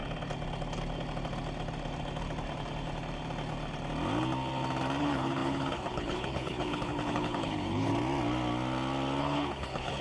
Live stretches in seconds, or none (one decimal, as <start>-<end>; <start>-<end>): 0.0-5.0; 7.9-9.2